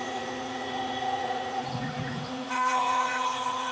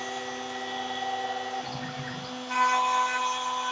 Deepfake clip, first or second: first